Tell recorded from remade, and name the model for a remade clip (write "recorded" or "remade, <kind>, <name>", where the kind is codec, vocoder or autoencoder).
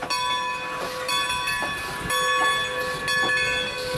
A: recorded